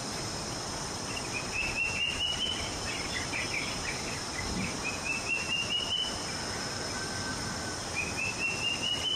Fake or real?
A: real